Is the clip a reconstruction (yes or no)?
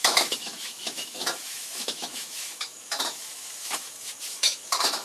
yes